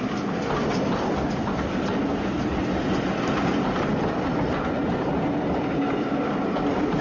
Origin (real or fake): real